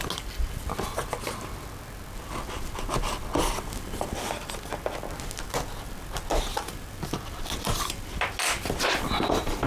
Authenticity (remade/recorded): recorded